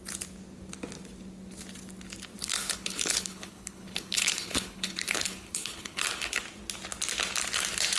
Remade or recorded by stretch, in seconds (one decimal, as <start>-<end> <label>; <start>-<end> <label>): 0.0-2.4 recorded; 2.4-6.4 remade; 6.4-8.0 recorded